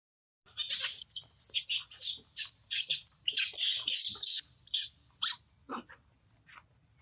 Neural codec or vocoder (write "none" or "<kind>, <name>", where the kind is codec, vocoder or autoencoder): none